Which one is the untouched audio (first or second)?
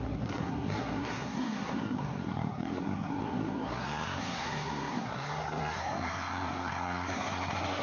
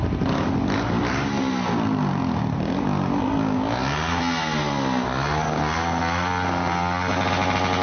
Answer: second